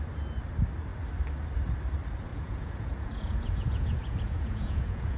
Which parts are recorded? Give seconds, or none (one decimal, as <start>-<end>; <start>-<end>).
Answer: 0.0-2.3